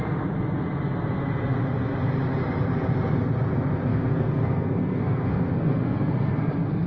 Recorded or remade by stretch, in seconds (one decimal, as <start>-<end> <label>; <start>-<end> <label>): 0.0-3.9 recorded; 3.9-6.9 remade